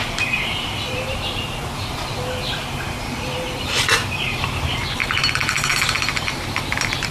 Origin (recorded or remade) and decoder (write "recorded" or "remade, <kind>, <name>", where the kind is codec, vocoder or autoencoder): remade, vocoder, BigVGAN v2